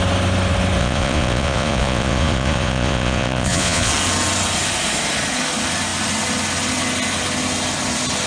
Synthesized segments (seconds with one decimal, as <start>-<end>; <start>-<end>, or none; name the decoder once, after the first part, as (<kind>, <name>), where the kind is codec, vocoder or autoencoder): 0.8-3.9 (vocoder, Vocos)